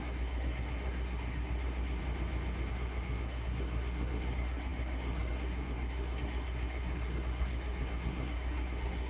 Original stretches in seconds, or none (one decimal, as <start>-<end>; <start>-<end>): 2.0-2.7